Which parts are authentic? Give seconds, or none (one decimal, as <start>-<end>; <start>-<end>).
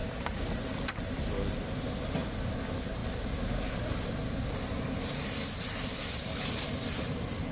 0.0-7.5